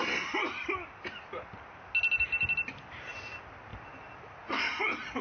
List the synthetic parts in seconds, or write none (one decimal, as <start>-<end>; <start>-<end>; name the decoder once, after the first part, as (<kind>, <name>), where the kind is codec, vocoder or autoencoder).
none